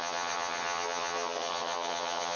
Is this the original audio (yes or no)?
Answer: no